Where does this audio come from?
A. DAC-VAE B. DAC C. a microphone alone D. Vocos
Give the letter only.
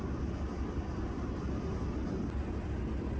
C